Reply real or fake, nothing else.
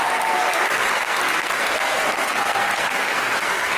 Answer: fake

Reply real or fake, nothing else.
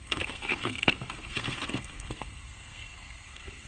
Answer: fake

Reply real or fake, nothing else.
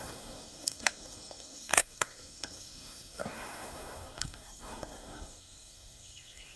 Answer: fake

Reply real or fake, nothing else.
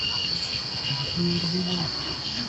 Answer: fake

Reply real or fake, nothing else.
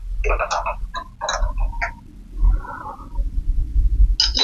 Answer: real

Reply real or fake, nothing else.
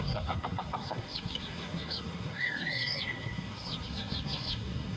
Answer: fake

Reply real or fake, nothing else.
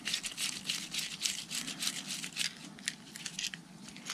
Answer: real